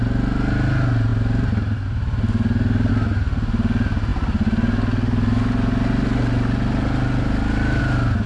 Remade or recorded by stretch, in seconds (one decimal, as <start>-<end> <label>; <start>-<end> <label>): 0.0-8.3 recorded